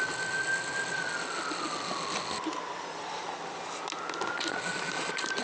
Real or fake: real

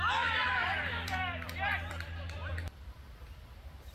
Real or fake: fake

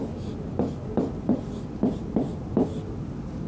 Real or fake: real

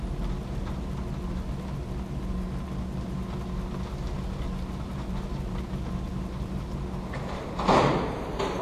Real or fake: real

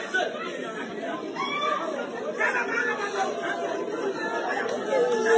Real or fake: real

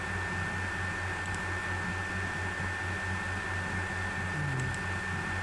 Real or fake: real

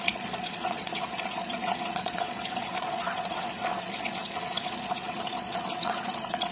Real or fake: fake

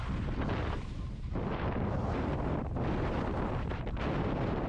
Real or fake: real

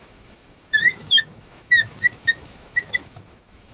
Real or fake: fake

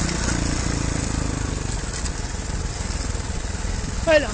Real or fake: real